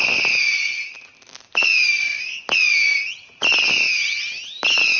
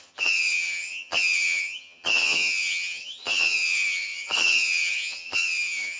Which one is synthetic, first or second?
second